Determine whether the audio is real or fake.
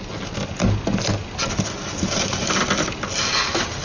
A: real